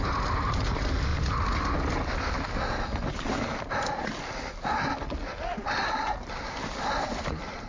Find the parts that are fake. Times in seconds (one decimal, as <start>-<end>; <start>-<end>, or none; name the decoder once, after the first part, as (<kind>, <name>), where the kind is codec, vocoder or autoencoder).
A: none